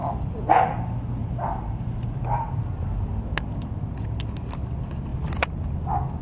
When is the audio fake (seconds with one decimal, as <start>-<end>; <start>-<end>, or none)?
1.2-2.2; 5.1-5.7